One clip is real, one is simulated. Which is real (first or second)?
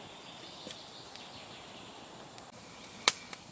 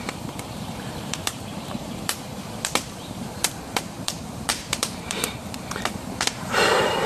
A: first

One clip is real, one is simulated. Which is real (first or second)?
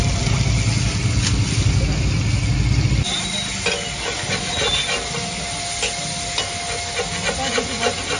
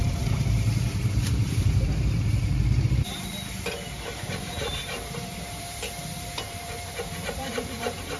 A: first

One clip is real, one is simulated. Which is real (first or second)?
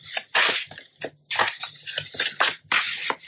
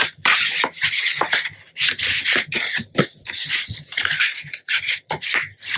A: first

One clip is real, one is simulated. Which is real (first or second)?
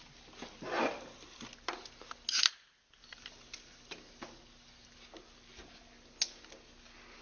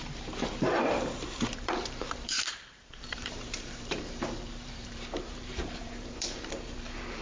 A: first